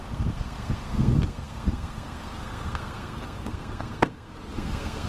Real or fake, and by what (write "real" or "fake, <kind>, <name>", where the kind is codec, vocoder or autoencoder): fake, codec, SNAC